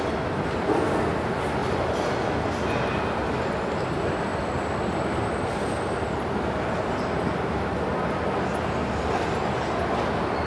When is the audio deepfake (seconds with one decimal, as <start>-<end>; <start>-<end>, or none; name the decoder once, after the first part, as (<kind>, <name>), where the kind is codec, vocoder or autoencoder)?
1.6-2.2 (vocoder, BigVGAN v2); 4.3-5.6